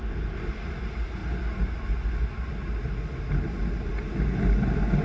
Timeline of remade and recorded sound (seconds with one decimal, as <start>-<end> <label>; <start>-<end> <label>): 0.0-5.0 recorded